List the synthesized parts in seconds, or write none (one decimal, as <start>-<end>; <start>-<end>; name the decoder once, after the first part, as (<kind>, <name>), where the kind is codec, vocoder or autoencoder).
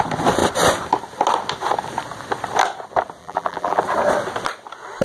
3.2-3.8 (vocoder, BigVGAN v2)